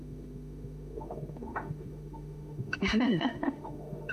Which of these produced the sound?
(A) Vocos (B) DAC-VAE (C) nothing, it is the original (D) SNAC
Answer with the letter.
B